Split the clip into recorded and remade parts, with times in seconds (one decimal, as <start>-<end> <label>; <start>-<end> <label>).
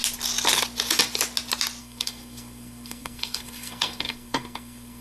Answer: 0.0-1.8 recorded; 1.8-5.0 remade